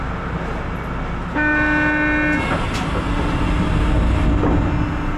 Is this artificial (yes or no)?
no